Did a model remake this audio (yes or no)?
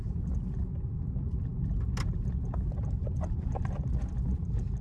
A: no